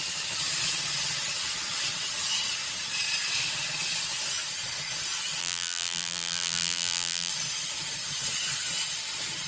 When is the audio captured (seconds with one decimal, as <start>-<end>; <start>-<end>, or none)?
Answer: 0.0-5.4; 7.3-9.5